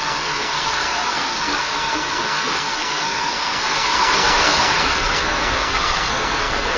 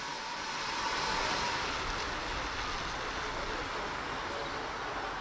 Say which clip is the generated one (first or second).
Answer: first